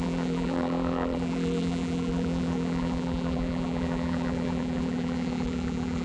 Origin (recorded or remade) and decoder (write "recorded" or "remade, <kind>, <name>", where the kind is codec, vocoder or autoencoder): remade, vocoder, BigVGAN v2